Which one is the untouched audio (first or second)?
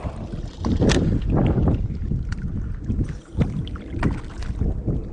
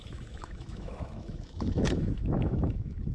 first